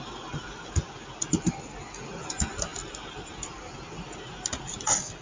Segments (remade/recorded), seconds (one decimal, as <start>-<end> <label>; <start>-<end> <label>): 0.0-5.2 recorded